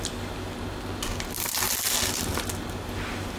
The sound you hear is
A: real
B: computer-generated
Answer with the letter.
A